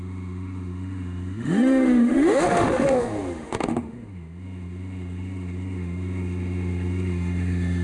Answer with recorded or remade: remade